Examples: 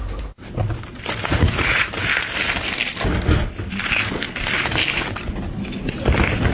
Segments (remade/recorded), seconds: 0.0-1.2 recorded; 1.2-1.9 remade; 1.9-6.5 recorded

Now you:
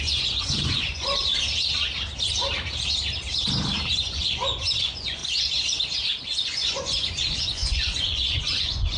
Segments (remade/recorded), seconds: 0.0-1.2 remade; 1.2-4.0 recorded; 4.0-5.2 remade; 5.2-6.2 recorded; 6.2-9.0 remade

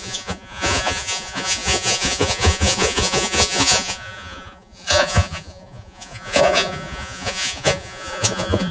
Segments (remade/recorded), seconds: 0.0-8.7 remade